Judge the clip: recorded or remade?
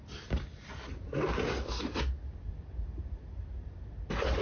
recorded